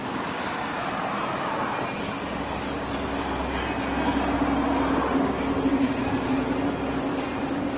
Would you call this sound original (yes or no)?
yes